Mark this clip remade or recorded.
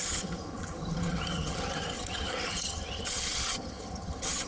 remade